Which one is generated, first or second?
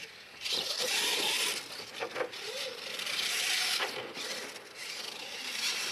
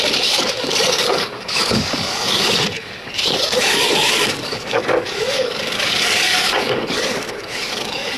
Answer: second